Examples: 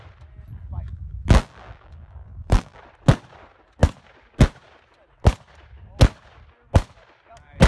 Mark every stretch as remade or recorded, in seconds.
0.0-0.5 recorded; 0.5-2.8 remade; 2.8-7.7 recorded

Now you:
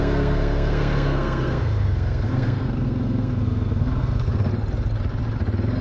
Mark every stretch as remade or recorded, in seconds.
0.0-4.5 remade; 4.5-5.8 recorded

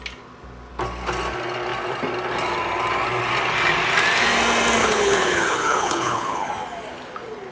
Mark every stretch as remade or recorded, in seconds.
0.0-4.8 recorded; 4.8-6.5 remade; 6.5-7.5 recorded

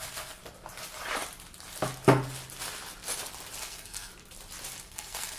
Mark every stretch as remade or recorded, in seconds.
0.0-0.4 remade; 0.4-3.6 recorded; 3.6-4.1 remade; 4.1-4.8 recorded; 4.8-5.4 remade

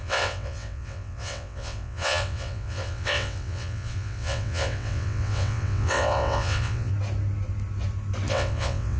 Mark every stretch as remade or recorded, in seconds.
0.0-6.9 remade; 6.9-8.3 recorded; 8.3-9.0 remade

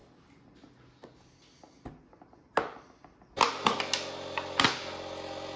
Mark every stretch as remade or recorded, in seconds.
0.0-5.6 recorded

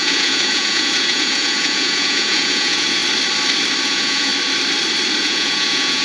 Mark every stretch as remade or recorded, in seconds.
0.0-3.0 remade; 3.0-3.8 recorded; 3.8-4.3 remade; 4.3-5.2 recorded; 5.2-6.0 remade

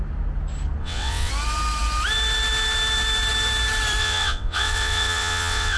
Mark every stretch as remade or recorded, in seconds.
0.0-0.8 recorded; 0.8-1.3 remade; 1.3-4.0 recorded; 4.0-5.8 remade